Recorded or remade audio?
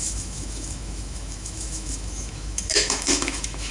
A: remade